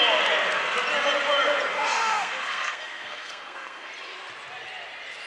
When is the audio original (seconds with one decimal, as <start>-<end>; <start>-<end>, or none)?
0.0-1.7; 3.9-5.3